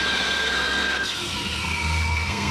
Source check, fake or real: fake